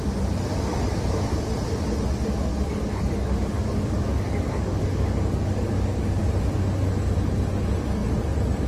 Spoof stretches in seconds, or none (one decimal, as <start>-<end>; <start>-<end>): 2.5-6.3